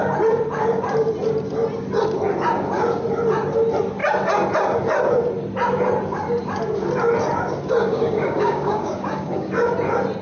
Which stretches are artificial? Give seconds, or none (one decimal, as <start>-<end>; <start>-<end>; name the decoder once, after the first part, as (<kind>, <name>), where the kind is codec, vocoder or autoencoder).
7.8-9.5 (codec, DAC)